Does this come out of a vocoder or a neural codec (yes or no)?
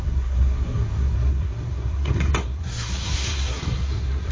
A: yes